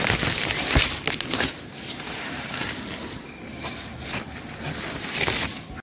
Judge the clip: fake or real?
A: real